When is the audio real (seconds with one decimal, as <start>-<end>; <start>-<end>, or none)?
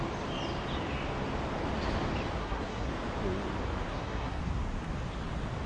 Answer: 0.0-2.4; 2.9-3.9; 4.4-5.7